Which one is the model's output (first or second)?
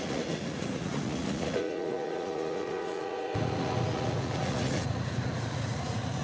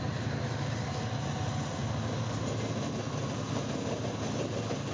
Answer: first